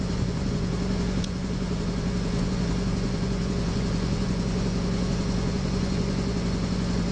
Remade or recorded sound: remade